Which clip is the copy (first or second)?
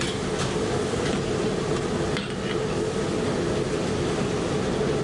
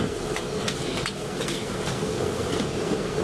second